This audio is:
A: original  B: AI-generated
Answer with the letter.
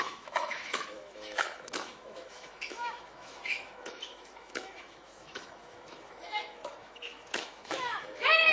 B